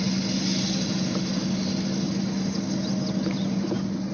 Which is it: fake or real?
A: real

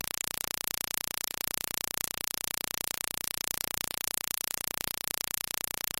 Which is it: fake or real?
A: fake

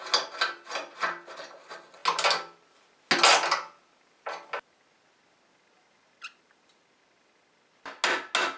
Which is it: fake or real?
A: real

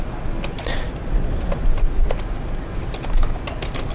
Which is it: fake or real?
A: real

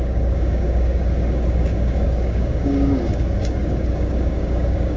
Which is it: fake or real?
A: fake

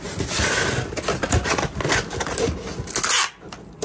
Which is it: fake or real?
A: real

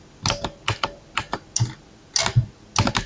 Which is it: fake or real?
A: real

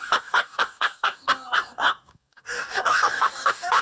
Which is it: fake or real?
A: fake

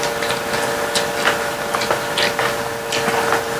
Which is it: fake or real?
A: real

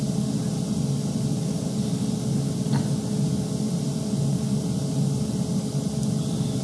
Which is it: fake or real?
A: real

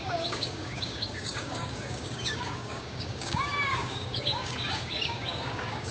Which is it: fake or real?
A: fake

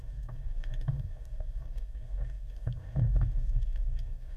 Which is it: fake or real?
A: fake